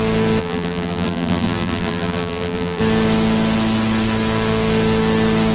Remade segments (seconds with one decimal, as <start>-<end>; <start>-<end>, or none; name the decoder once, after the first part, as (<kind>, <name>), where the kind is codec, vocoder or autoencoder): 0.4-2.8 (vocoder, BigVGAN v2)